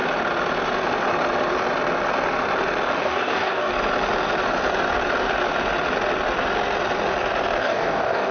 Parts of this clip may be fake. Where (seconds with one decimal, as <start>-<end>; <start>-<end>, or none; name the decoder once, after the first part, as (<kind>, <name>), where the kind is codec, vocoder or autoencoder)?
3.0-3.7 (codec, DAC); 7.6-8.3